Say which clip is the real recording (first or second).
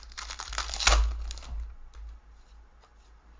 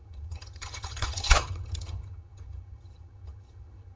first